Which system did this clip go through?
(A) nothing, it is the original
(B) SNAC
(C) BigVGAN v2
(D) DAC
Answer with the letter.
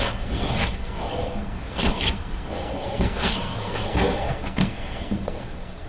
B